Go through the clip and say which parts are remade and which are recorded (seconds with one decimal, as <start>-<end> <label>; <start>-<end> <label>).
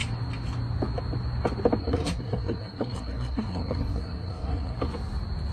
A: 0.0-1.8 recorded; 1.8-4.8 remade; 4.8-5.5 recorded